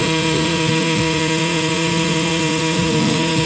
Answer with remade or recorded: remade